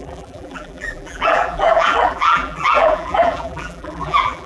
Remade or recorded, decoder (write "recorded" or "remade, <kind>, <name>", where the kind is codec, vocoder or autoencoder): remade, vocoder, BigVGAN v2